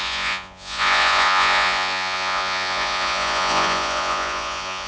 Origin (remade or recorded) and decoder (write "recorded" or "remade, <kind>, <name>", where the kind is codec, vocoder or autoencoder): remade, vocoder, Vocos